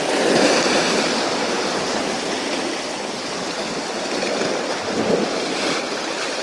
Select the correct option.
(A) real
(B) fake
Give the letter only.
A